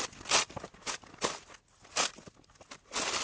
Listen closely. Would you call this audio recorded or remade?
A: recorded